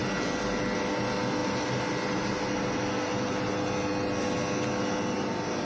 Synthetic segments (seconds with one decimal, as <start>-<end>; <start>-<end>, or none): none